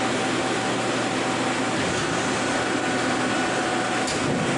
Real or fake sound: real